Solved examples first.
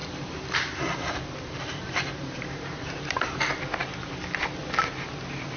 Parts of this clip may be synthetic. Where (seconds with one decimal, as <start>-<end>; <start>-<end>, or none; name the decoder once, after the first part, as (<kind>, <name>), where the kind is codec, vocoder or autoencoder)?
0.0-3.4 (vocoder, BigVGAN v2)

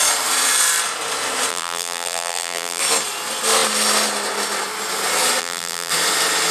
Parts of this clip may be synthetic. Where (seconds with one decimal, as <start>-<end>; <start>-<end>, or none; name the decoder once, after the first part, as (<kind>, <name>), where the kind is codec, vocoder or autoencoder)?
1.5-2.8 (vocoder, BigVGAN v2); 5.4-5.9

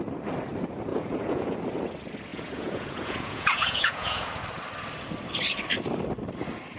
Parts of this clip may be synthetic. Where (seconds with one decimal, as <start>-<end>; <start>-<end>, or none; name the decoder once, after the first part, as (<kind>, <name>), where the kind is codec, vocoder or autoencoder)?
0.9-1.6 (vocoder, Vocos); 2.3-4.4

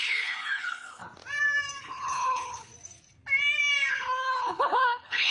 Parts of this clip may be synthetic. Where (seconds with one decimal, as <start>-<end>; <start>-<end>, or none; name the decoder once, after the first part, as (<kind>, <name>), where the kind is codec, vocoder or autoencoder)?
0.0-1.0 (codec, HILCodec); 1.8-2.7; 3.9-5.3